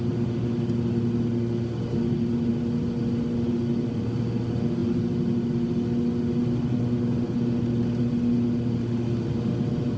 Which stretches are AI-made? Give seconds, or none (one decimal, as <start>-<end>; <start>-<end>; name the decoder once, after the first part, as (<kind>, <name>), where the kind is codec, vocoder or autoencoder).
none